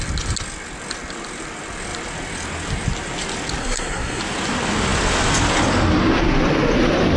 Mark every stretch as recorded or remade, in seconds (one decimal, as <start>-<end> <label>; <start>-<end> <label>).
0.0-3.6 recorded; 3.6-4.2 remade; 4.2-7.2 recorded